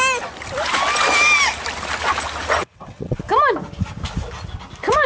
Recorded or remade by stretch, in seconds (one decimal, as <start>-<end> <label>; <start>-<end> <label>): 0.0-2.6 recorded; 2.6-3.2 remade; 3.2-5.1 recorded